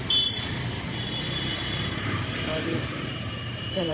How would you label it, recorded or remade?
remade